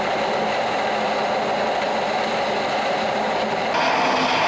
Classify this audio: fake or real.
real